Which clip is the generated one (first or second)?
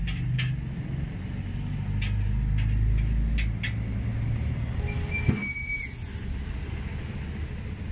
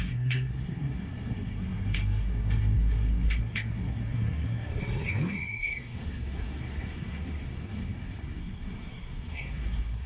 second